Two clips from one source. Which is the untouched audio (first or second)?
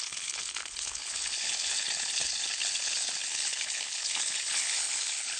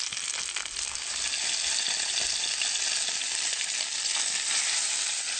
second